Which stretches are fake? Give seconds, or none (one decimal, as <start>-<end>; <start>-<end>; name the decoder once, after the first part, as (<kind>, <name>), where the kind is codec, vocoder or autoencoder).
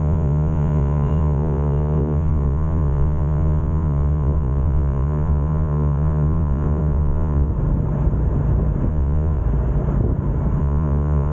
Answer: 0.0-7.5 (vocoder, Vocos); 8.9-9.4; 10.6-11.3